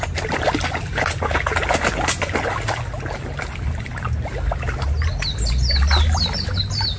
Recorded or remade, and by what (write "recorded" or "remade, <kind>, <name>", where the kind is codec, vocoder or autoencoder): recorded